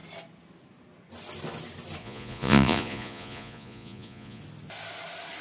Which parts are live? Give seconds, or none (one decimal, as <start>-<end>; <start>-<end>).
0.0-2.0; 4.4-5.4

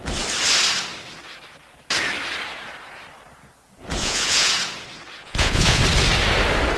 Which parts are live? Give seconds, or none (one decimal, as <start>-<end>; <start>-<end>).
0.0-4.0; 4.5-5.2; 5.8-6.8